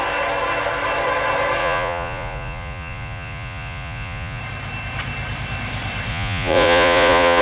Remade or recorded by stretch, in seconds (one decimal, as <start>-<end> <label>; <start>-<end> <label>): 0.0-1.6 recorded; 1.6-4.4 remade; 4.4-6.1 recorded; 6.1-7.4 remade